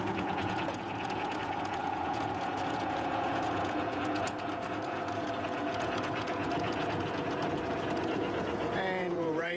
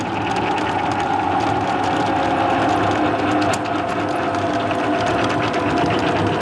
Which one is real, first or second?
second